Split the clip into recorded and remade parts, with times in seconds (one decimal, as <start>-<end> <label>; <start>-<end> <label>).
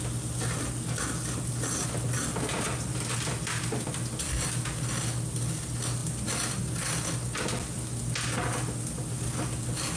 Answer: 0.0-10.0 recorded